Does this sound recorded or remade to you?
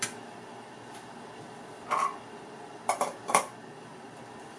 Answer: recorded